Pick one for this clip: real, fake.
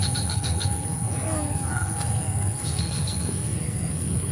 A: fake